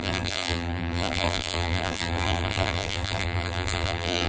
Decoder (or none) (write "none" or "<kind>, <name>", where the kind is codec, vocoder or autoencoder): vocoder, BigVGAN v2